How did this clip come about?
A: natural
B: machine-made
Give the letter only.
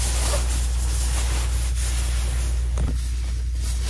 A